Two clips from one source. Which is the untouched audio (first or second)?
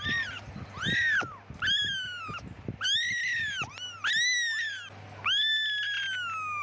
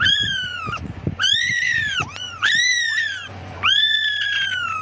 first